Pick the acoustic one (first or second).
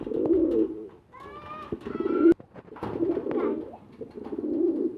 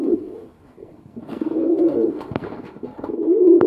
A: first